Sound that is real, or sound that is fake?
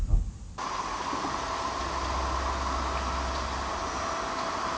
real